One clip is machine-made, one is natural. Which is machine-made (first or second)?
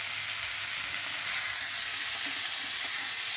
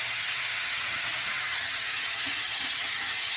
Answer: second